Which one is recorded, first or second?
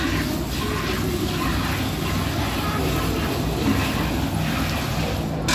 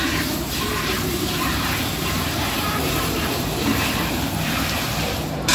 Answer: first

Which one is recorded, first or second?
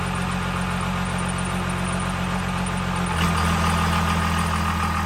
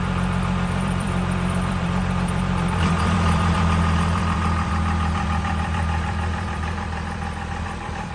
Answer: first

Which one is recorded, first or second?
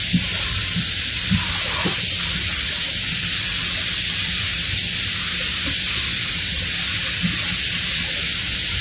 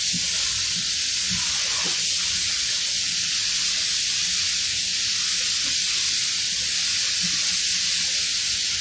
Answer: second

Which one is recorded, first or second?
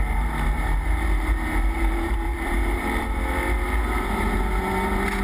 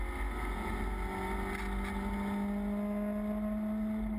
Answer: second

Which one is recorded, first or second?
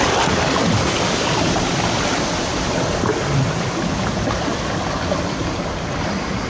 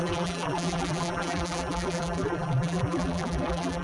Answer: first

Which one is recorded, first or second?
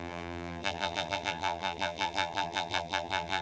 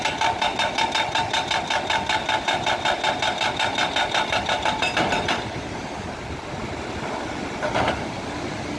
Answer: second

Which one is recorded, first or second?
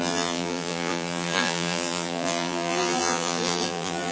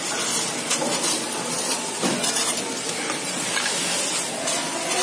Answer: second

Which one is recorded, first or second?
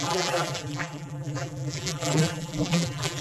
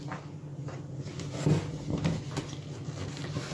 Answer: second